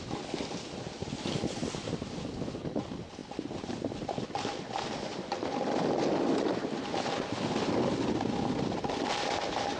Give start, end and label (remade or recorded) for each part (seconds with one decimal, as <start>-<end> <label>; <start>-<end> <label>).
0.0-9.8 recorded